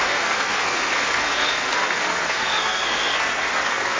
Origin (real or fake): fake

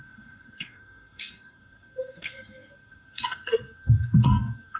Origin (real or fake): fake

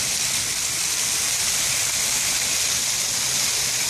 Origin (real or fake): real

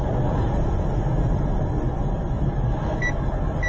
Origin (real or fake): real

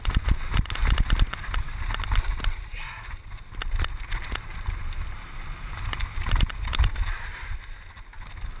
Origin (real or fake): real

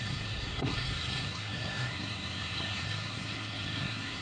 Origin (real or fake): fake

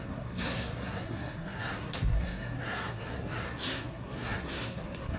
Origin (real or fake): fake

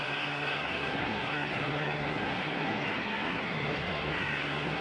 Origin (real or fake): fake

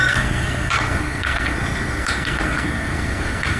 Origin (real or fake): fake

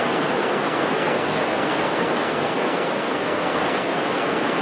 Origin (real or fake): fake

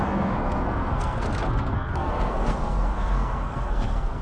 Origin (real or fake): fake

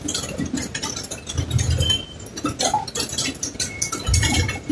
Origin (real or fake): real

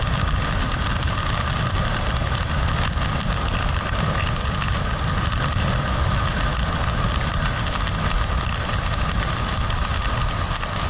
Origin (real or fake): real